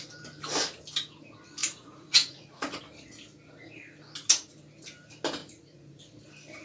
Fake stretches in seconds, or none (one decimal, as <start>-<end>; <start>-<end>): 1.6-2.8; 5.4-6.0